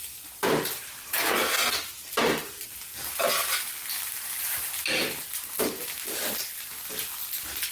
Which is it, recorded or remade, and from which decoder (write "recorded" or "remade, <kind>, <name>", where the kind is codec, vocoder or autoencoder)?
recorded